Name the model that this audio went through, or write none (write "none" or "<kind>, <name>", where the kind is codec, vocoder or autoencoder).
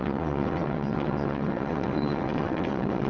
vocoder, WaveNeXt